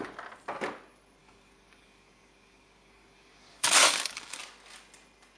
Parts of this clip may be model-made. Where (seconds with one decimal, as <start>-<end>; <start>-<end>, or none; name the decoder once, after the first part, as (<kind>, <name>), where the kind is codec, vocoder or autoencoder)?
1.2-4.4 (codec, DAC)